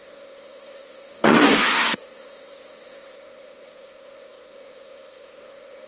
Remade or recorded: remade